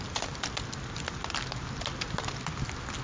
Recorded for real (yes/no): yes